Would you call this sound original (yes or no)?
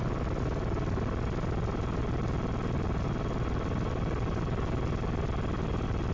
yes